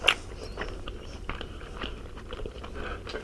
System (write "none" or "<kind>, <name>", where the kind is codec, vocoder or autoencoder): none